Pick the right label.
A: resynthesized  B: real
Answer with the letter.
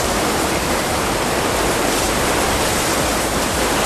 A